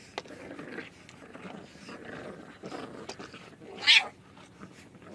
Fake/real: real